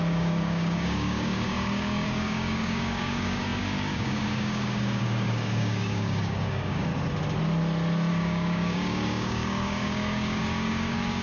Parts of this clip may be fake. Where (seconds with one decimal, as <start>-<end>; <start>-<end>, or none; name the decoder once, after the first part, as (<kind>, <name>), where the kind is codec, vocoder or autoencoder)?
0.0-6.9 (codec, DAC); 8.1-11.2